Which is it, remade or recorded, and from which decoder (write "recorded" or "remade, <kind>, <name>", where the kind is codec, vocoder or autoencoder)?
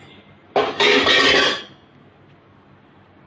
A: recorded